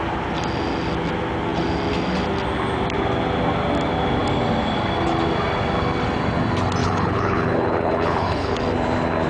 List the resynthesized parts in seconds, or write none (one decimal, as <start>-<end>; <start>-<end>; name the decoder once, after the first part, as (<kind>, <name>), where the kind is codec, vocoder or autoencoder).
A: 6.8-8.6 (codec, HILCodec)